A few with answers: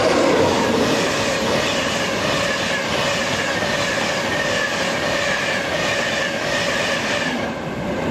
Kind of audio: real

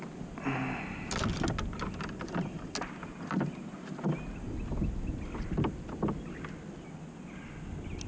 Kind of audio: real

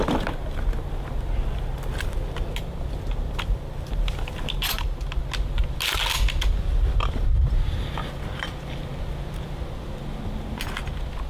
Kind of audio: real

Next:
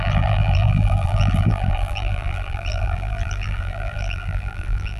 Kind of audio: fake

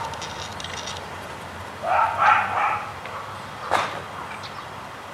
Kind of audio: real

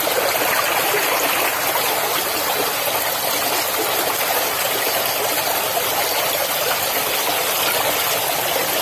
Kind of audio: real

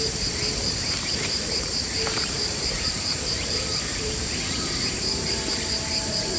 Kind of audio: fake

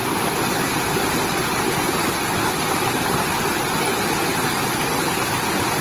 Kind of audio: real